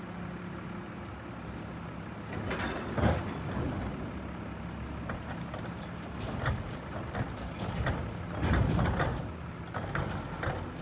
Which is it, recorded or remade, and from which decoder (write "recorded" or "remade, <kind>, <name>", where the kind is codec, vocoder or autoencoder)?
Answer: recorded